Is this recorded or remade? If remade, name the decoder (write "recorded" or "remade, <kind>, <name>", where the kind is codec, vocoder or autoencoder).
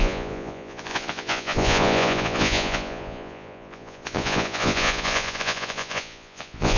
remade, vocoder, Vocos